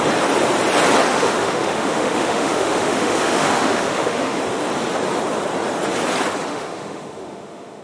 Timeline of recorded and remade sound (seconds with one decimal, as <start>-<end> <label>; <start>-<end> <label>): 0.0-1.1 recorded; 1.1-4.4 remade; 4.4-6.5 recorded; 6.5-7.8 remade